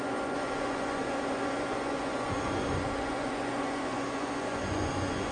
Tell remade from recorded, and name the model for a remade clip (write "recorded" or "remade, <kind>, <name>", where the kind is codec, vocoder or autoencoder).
remade, vocoder, Vocos